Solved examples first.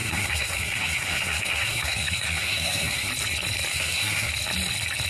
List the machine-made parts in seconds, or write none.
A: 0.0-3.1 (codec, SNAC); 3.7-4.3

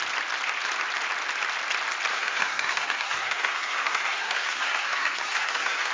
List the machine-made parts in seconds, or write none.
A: 2.1-5.9 (codec, SNAC)

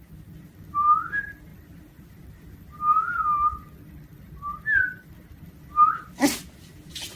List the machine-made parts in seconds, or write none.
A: none

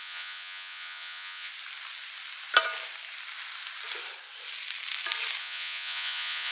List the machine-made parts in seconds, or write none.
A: 0.0-1.5 (vocoder, Vocos); 5.4-6.5

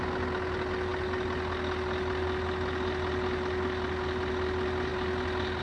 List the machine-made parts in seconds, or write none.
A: none